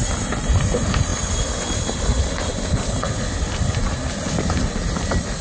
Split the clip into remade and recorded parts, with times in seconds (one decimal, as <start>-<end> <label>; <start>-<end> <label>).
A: 0.0-5.4 recorded